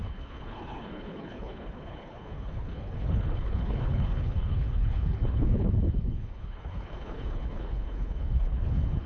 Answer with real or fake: fake